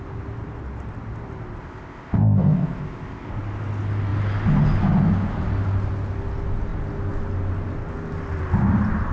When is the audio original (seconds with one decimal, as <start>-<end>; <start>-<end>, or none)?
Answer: 0.0-1.6; 3.3-9.1